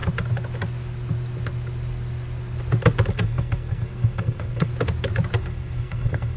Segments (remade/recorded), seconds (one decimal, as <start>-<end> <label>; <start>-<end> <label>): 0.0-3.1 recorded; 3.1-4.7 remade; 4.7-5.4 recorded; 5.4-6.4 remade